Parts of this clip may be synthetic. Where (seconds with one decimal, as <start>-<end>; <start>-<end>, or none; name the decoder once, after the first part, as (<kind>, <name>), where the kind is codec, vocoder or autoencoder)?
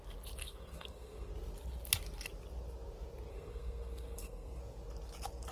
0.4-1.3 (codec, SNAC); 3.3-4.6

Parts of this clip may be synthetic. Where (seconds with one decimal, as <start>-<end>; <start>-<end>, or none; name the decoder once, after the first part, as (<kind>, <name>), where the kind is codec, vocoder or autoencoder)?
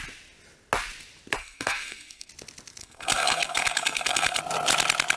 1.4-2.3 (codec, SNAC); 2.8-4.4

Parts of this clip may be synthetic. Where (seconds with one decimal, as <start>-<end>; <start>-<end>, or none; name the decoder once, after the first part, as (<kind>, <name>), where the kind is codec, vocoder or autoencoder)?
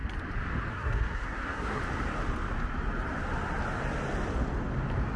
0.7-1.8 (codec, SNAC)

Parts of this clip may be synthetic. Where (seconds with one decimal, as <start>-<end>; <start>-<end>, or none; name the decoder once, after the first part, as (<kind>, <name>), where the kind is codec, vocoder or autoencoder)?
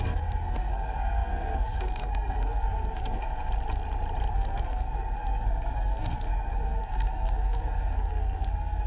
0.0-3.5 (codec, SNAC); 4.3-8.9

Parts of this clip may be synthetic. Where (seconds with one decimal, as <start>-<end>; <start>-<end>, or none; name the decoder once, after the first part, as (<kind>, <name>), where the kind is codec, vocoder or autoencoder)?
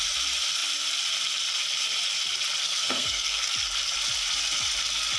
2.6-3.5 (codec, SNAC)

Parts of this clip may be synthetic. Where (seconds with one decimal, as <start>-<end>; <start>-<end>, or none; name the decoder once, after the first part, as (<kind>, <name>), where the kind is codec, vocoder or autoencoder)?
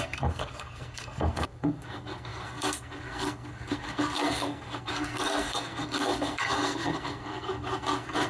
0.0-8.3 (codec, SNAC)